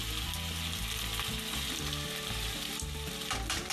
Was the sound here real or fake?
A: real